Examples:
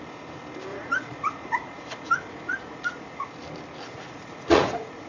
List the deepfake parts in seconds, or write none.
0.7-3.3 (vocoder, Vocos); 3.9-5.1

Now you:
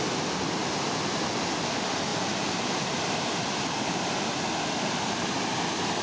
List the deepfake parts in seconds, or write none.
2.1-2.8 (vocoder, BigVGAN v2)

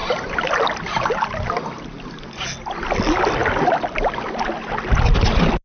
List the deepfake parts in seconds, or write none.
0.0-1.9 (vocoder, BigVGAN v2); 3.4-4.9

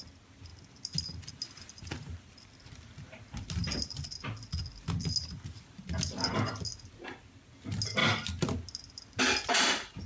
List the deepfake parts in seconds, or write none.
none

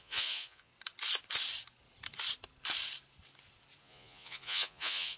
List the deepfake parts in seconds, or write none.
0.0-0.7 (vocoder, Vocos); 3.8-5.2

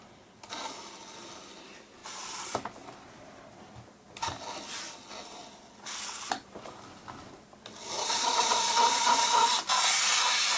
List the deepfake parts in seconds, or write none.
none

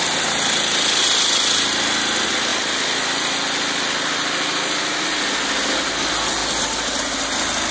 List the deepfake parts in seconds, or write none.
none